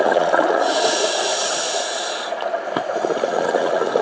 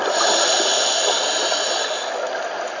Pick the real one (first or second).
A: second